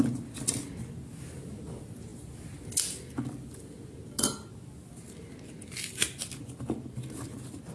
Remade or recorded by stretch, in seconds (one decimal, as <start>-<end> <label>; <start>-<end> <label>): 0.0-7.7 recorded